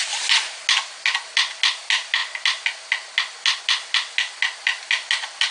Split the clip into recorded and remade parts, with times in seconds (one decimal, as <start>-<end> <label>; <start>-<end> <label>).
0.0-5.5 recorded